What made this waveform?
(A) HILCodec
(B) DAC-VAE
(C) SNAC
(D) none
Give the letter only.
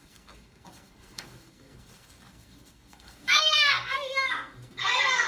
C